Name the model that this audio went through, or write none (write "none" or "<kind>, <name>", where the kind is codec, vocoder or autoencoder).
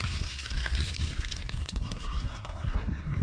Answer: codec, SNAC